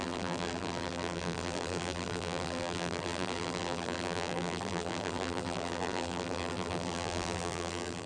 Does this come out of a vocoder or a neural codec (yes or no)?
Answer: yes